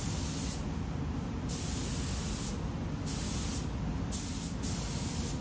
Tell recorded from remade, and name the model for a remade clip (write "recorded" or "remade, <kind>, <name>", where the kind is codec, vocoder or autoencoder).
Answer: recorded